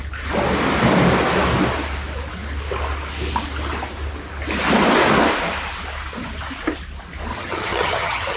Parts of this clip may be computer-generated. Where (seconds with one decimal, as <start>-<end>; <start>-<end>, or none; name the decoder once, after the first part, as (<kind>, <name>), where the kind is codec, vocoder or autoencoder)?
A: 7.3-8.4 (vocoder, HiFi-GAN)